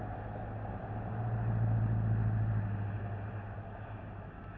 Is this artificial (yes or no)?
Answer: no